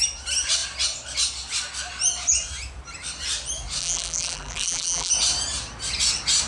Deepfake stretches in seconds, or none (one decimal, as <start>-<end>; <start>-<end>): 3.8-5.1